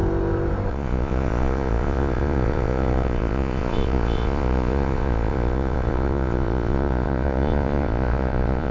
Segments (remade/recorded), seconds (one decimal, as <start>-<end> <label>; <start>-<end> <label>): 0.0-0.7 recorded; 0.7-8.7 remade